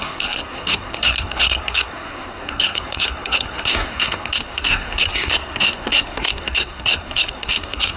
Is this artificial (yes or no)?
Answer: yes